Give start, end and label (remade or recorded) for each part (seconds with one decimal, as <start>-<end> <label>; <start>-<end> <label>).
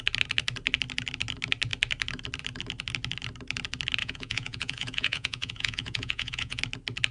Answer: 0.0-4.0 recorded; 4.0-6.6 remade; 6.6-7.1 recorded